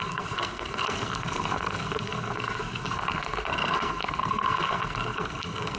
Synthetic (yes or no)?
yes